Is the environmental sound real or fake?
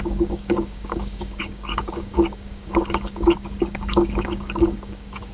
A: fake